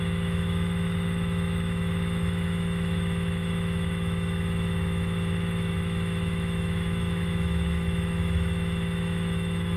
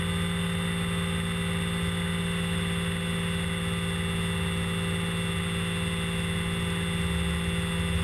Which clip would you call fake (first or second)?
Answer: first